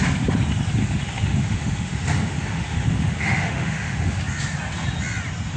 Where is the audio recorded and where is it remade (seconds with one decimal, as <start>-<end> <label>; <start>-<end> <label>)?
0.0-0.8 recorded; 0.8-4.2 remade; 4.2-5.6 recorded